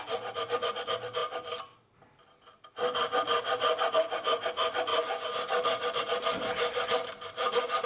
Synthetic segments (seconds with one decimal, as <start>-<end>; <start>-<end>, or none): none